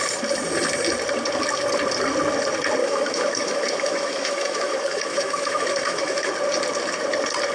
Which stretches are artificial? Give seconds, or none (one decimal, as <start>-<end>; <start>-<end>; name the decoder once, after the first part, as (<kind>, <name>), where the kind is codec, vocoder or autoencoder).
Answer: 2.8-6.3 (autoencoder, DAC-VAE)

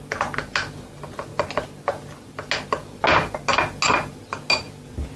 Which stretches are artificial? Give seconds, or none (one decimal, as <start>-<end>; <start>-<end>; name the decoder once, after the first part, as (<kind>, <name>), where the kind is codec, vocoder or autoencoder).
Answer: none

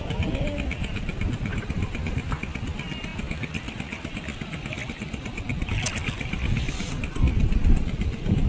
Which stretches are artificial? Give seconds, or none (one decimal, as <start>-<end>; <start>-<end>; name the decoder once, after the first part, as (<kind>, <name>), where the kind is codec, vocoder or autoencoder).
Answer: none